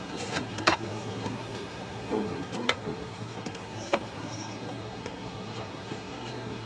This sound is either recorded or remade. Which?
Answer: remade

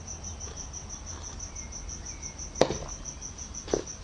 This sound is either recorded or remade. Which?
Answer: recorded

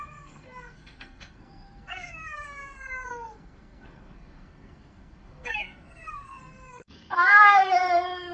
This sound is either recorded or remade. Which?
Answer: remade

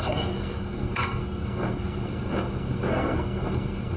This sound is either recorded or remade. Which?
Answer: remade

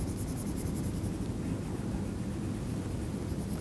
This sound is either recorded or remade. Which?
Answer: recorded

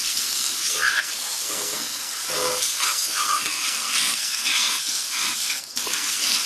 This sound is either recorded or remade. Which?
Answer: remade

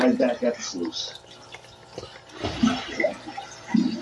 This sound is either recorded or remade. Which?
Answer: recorded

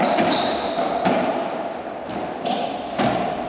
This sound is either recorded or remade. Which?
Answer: recorded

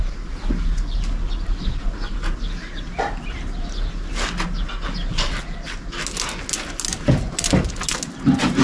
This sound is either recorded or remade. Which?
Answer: recorded